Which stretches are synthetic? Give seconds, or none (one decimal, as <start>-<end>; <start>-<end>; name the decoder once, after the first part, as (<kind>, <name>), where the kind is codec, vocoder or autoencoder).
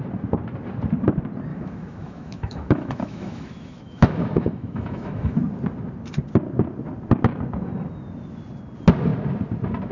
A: 1.5-5.4 (autoencoder, DAC-VAE)